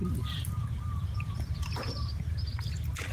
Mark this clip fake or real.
real